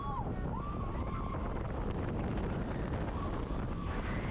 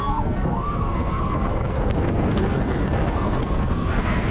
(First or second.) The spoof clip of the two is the second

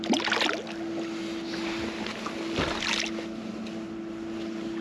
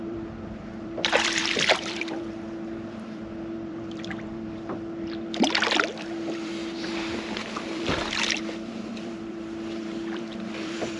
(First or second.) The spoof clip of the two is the second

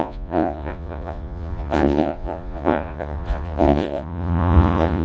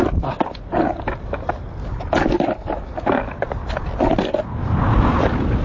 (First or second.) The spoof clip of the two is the first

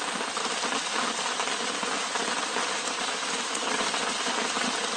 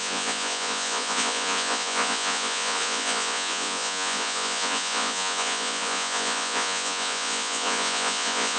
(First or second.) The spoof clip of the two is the second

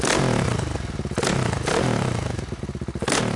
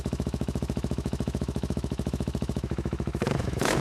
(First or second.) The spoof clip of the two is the second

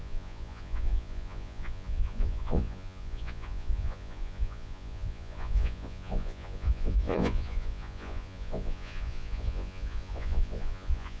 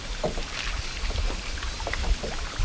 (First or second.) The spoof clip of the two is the first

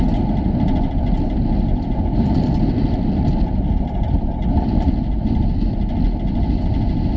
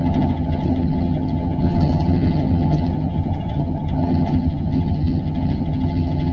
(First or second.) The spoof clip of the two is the second